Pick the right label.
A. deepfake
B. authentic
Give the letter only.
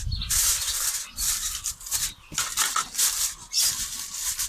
B